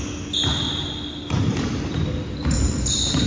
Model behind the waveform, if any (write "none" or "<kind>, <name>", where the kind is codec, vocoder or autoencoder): none